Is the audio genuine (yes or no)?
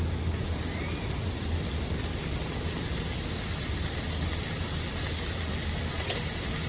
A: yes